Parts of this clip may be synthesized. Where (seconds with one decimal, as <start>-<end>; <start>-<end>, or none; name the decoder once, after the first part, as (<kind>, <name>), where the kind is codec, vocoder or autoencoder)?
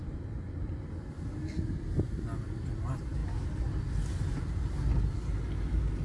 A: none